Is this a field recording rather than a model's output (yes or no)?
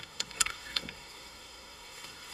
no